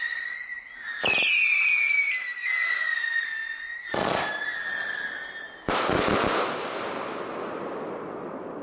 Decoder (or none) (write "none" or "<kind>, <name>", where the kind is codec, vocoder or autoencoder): none